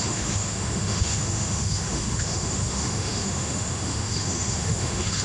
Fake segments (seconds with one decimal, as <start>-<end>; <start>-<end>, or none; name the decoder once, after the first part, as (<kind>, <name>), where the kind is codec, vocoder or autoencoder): 0.0-5.2 (autoencoder, DAC-VAE)